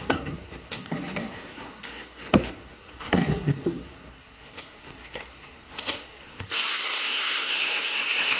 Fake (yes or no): yes